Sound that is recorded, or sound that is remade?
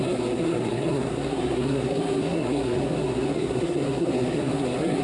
remade